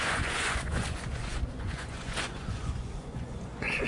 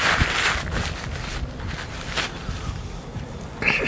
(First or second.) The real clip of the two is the second